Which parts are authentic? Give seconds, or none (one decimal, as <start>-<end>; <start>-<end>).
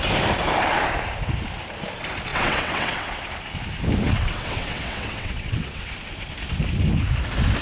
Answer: 0.0-2.3; 3.1-4.1; 5.9-7.6